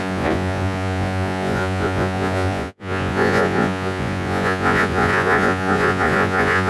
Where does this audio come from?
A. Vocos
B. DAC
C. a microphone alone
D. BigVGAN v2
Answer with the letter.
A